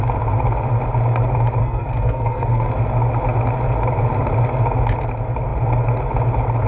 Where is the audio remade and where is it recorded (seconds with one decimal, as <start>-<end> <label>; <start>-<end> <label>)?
0.0-1.6 recorded; 1.6-2.7 remade; 2.7-6.7 recorded